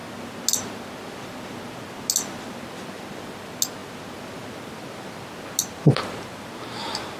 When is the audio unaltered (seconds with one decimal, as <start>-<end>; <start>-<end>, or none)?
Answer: 0.0-7.2